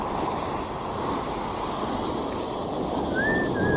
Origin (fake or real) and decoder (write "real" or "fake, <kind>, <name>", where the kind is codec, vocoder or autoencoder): real